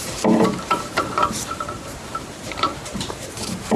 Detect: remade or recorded remade